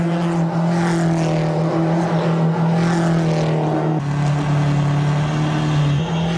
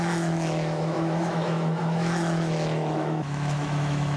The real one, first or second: first